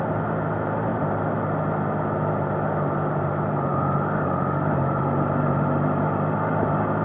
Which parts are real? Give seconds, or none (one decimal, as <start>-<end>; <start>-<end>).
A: 0.0-7.0